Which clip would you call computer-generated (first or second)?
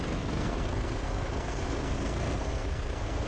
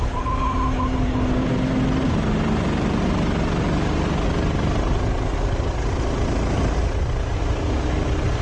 first